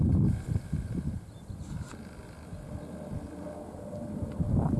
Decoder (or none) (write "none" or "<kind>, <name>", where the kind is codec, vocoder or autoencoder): none